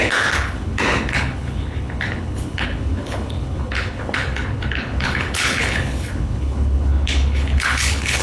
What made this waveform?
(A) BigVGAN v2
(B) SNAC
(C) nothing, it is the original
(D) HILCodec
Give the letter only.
D